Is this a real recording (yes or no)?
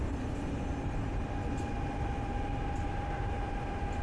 yes